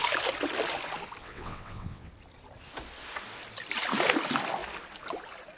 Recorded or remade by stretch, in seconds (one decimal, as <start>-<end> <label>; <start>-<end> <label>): 0.0-1.2 recorded; 1.2-2.1 remade; 2.1-5.6 recorded